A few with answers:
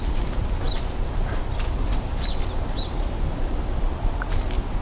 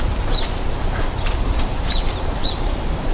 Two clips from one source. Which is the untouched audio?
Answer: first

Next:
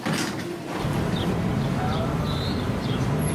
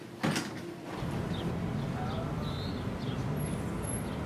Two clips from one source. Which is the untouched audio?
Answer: second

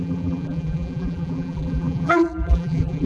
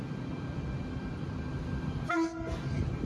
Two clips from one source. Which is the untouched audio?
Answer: second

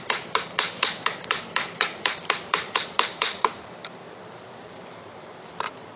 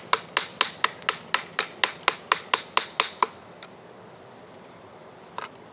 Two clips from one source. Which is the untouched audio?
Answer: second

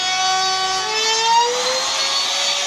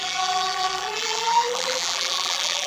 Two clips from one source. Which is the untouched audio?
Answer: first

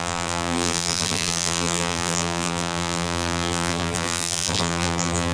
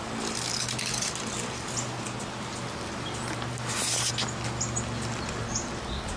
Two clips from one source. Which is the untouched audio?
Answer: second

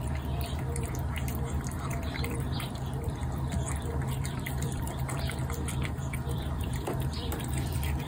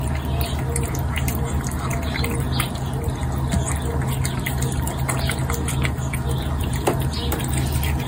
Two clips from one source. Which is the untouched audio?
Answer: second